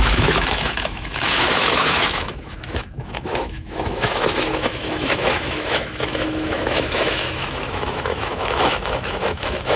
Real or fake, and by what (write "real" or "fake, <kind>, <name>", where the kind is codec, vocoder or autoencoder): fake, autoencoder, DAC-VAE